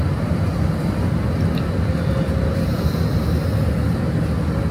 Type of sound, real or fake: real